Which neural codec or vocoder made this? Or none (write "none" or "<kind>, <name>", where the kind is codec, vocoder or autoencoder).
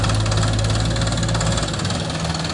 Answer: none